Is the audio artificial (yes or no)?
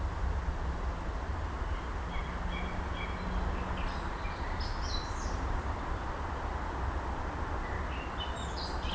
no